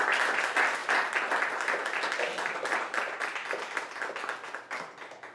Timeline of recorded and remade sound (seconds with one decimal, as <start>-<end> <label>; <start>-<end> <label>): 0.0-5.3 recorded